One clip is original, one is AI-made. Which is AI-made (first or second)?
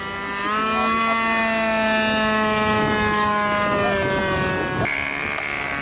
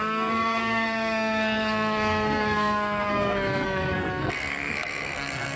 second